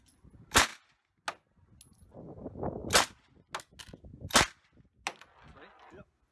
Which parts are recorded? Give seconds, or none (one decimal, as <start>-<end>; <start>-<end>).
0.0-6.3